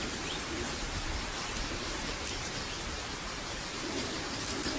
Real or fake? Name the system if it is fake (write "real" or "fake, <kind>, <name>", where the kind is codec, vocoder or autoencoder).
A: fake, vocoder, BigVGAN v2